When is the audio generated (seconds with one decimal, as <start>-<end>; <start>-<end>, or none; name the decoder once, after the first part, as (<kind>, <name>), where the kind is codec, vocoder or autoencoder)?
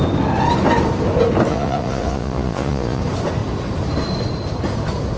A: 1.5-3.0 (vocoder, Vocos)